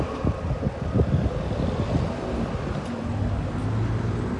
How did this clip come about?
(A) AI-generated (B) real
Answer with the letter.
B